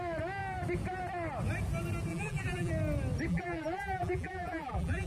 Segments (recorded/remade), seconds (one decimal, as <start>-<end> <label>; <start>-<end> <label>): 0.0-2.1 recorded; 2.1-2.7 remade; 2.7-3.3 recorded; 3.3-5.1 remade